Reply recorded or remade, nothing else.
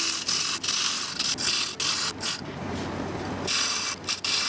recorded